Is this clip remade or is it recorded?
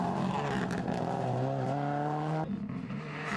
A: recorded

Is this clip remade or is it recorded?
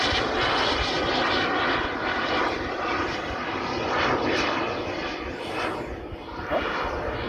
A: recorded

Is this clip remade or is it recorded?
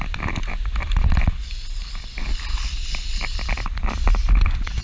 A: recorded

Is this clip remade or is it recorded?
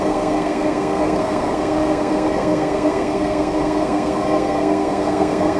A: remade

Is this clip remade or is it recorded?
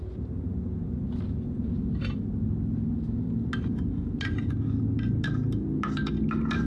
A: recorded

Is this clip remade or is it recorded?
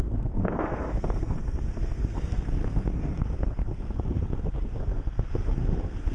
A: remade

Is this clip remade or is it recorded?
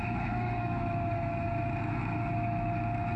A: remade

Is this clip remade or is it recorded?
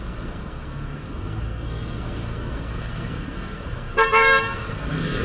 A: remade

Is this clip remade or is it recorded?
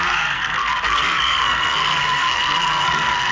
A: remade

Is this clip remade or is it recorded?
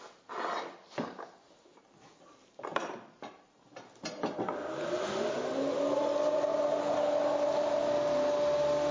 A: recorded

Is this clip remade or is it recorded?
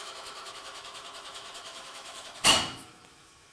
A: remade